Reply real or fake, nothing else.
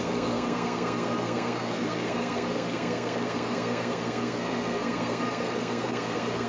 fake